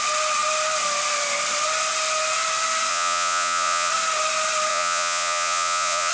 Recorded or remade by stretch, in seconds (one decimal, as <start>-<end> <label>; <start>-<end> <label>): 0.0-2.9 recorded; 2.9-3.9 remade; 3.9-4.7 recorded; 4.7-6.1 remade